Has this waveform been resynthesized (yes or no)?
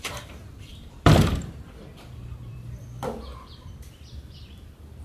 yes